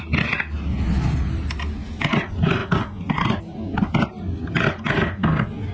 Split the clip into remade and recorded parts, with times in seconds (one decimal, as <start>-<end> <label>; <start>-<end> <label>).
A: 0.0-5.7 recorded

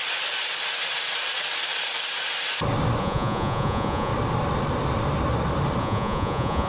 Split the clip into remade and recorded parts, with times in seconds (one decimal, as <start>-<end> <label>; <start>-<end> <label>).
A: 0.0-3.0 recorded; 3.0-4.1 remade; 4.1-5.8 recorded; 5.8-6.7 remade

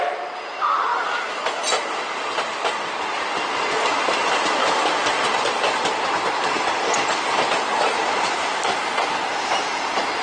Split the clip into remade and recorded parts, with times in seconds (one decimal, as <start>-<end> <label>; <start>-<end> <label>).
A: 0.0-0.9 recorded; 0.9-3.6 remade; 3.6-4.6 recorded; 4.6-9.2 remade; 9.2-10.2 recorded

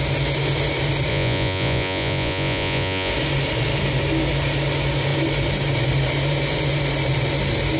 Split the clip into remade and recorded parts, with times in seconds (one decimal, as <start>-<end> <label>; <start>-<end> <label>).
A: 0.0-1.1 recorded; 1.1-3.1 remade; 3.1-7.8 recorded

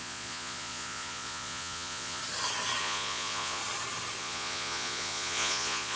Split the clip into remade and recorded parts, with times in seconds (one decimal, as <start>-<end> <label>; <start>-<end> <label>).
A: 0.0-2.2 remade; 2.2-2.8 recorded; 2.8-3.6 remade; 3.6-4.2 recorded; 4.2-6.0 remade

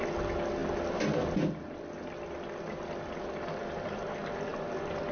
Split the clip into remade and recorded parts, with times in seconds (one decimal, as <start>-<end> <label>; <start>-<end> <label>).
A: 0.0-5.1 recorded

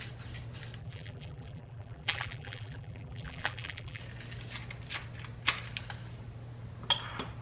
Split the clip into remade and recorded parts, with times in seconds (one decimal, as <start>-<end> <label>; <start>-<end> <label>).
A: 0.0-0.8 recorded; 0.8-4.0 remade; 4.0-7.4 recorded